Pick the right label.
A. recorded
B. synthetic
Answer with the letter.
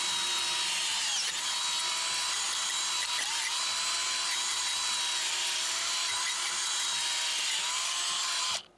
A